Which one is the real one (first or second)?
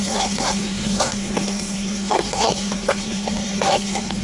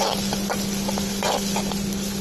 second